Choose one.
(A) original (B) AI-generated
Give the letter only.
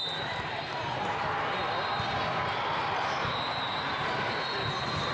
A